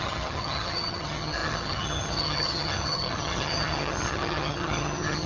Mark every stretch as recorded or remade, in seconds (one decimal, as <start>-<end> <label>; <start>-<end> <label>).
0.0-5.3 remade